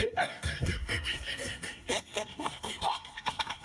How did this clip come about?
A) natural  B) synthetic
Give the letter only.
B